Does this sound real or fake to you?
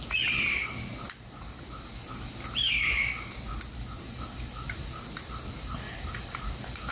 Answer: real